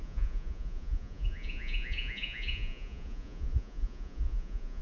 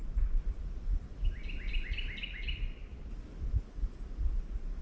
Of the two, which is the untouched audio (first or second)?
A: second